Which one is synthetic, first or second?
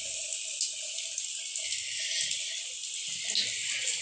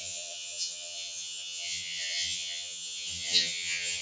second